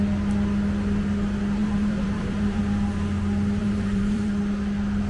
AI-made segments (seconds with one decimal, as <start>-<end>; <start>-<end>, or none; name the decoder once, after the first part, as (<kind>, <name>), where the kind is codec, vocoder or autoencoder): 1.6-2.6 (vocoder, BigVGAN v2); 3.6-4.3